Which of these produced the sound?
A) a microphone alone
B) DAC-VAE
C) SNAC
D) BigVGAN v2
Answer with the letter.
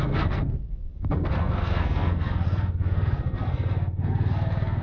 C